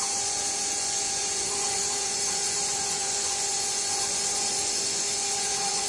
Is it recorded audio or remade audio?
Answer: remade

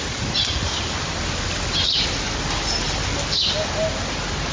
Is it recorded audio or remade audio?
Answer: recorded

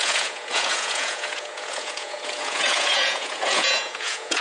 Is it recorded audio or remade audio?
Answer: remade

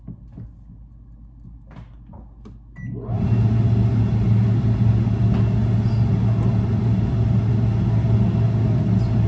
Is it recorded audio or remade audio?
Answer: recorded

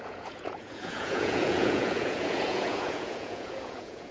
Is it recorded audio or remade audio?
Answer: remade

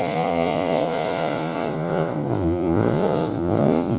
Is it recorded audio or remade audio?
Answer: remade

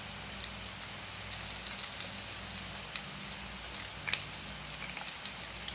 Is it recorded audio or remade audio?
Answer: recorded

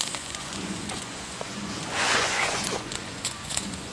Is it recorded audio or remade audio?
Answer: remade